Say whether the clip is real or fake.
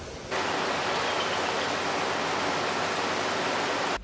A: real